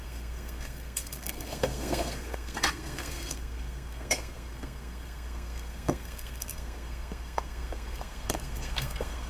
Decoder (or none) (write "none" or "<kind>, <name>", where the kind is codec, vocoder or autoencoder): codec, SNAC